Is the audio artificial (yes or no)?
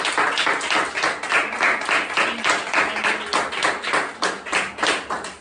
no